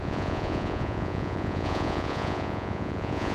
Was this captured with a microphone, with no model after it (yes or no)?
no